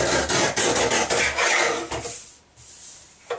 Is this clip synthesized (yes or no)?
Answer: no